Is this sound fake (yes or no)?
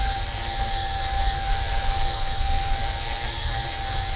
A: yes